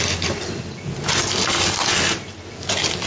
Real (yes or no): yes